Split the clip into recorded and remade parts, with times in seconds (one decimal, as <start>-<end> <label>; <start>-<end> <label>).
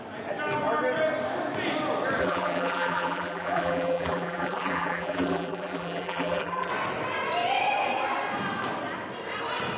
0.0-2.2 recorded; 2.2-6.7 remade; 6.7-9.8 recorded